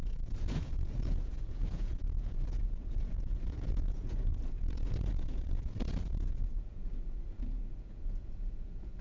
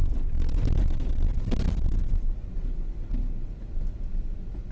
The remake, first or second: first